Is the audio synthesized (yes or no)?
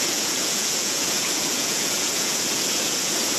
yes